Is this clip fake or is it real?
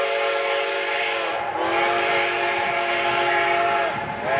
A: real